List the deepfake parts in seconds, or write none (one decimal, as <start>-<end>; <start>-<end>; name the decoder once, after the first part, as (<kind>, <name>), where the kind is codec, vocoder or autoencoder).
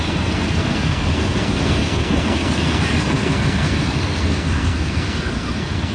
0.0-5.9 (codec, SNAC)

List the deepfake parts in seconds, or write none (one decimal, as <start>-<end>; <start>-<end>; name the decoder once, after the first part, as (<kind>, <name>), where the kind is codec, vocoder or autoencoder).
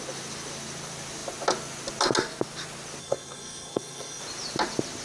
3.0-4.2 (codec, SNAC)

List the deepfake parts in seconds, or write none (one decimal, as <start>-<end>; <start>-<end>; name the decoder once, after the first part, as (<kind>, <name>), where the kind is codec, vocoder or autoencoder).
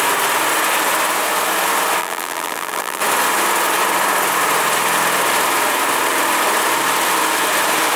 2.0-3.0 (vocoder, BigVGAN v2)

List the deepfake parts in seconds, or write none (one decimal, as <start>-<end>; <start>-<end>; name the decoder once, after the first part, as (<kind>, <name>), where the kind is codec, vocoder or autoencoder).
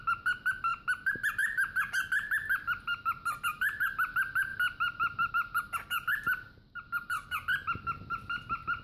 none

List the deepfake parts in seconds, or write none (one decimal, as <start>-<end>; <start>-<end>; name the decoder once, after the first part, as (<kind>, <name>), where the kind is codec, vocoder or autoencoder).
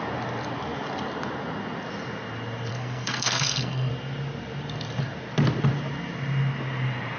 2.7-3.9 (codec, SNAC)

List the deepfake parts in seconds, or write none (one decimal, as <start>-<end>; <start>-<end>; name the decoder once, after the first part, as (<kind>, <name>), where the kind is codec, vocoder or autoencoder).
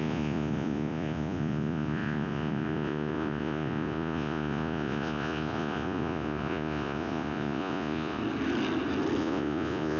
0.0-8.2 (vocoder, Vocos); 9.2-10.0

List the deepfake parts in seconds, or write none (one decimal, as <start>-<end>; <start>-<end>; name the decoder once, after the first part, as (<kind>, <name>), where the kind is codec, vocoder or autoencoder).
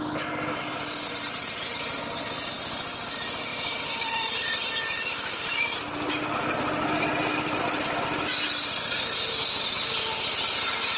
none